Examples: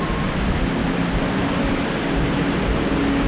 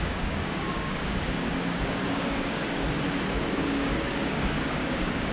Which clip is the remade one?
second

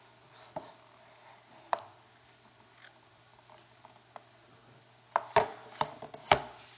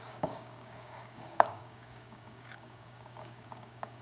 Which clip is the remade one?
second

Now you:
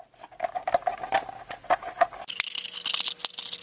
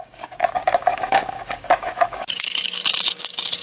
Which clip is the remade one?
second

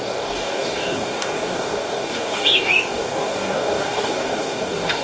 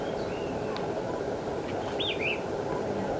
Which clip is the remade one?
first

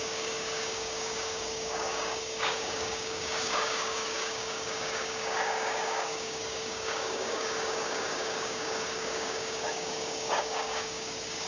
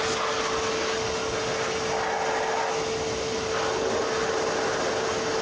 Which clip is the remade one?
first